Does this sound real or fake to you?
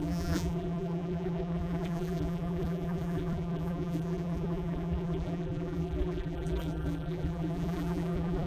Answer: fake